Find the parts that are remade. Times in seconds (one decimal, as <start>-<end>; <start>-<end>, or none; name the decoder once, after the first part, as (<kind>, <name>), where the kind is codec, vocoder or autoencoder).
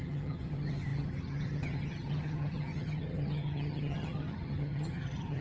0.0-5.4 (vocoder, HiFi-GAN)